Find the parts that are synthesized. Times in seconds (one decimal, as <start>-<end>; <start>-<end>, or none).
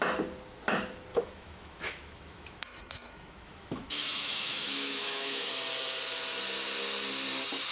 1.1-5.5